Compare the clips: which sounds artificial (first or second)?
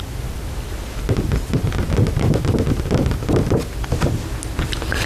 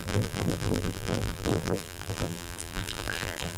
second